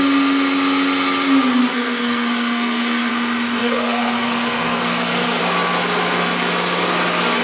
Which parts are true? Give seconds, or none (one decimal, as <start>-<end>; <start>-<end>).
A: 0.0-1.7; 3.1-3.6; 5.4-7.4